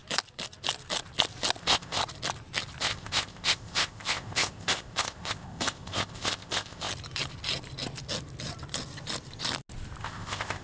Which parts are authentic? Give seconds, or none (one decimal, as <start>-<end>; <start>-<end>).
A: 0.0-1.6; 2.0-2.8; 6.9-10.0